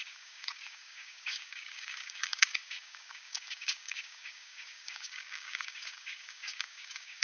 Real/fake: fake